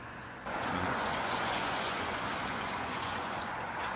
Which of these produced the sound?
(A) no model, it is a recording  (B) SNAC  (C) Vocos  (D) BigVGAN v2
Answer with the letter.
C